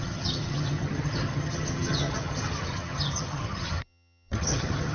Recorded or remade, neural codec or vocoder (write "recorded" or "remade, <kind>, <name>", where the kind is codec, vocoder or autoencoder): remade, vocoder, HiFi-GAN